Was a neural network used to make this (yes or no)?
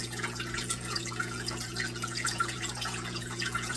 yes